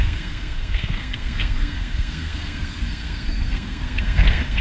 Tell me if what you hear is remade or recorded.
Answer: remade